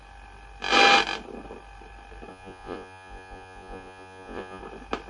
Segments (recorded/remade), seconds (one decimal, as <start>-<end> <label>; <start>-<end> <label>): 0.0-2.3 recorded; 2.3-4.6 remade; 4.6-5.1 recorded

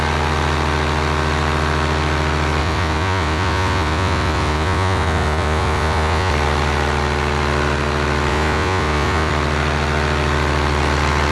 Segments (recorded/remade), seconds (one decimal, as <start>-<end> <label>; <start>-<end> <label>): 0.0-2.6 recorded; 2.6-6.3 remade; 6.3-8.3 recorded; 8.3-9.3 remade; 9.3-11.3 recorded

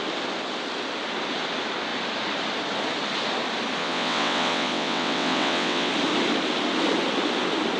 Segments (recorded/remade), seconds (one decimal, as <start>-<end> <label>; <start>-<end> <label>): 0.0-3.8 recorded; 3.8-5.9 remade; 5.9-7.8 recorded

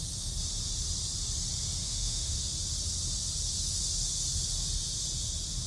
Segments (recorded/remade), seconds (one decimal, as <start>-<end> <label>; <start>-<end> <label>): 0.0-1.8 recorded; 1.8-2.4 remade; 2.4-5.7 recorded

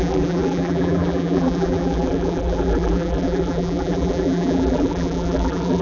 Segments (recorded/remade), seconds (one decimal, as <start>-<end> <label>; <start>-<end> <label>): 0.0-5.8 remade